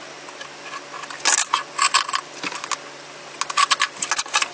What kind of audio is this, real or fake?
real